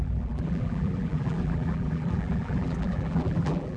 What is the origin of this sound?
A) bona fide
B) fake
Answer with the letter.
B